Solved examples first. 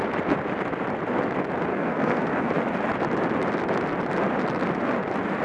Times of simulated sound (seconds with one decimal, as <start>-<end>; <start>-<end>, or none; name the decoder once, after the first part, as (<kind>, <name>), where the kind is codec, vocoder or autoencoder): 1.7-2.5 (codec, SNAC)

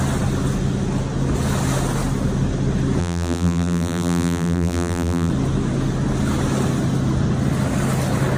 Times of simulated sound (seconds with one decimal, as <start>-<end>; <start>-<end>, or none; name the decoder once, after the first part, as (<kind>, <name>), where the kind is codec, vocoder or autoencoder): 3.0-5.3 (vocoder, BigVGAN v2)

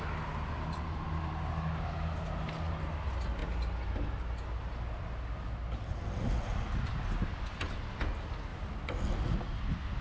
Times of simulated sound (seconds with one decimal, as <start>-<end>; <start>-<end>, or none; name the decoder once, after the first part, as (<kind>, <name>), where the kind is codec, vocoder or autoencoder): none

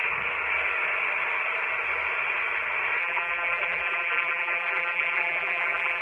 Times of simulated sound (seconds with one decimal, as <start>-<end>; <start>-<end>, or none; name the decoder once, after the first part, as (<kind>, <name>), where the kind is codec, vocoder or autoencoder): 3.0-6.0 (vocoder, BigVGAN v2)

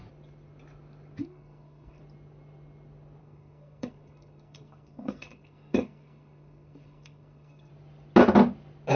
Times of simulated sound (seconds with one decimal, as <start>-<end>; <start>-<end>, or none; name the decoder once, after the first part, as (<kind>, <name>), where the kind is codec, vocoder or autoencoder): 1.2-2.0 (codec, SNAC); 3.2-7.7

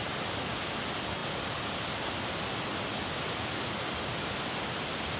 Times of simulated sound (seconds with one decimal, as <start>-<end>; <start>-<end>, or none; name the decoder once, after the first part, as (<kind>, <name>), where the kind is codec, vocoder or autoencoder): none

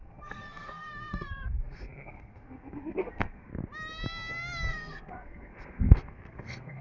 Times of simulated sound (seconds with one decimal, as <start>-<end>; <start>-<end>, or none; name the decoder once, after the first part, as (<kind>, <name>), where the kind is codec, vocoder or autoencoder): 0.0-3.5 (codec, SNAC); 4.7-6.8